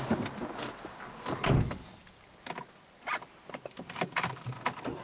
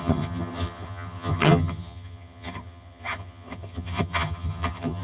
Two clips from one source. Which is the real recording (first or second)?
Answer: first